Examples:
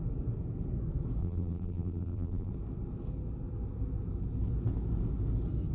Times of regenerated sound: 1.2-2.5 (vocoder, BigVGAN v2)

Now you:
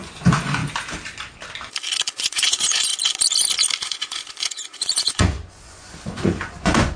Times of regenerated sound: 0.0-0.6 (vocoder, Vocos); 2.2-2.9; 3.8-7.0

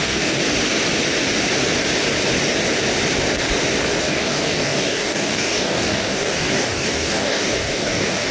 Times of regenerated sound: 0.0-0.4 (codec, DAC); 4.0-8.3